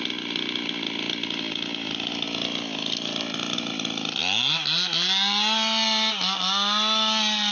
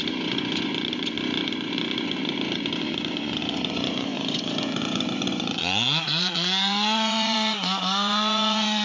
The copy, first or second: second